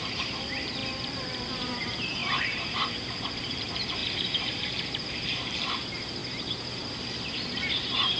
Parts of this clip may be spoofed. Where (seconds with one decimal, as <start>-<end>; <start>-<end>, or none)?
0.0-0.8; 1.5-8.2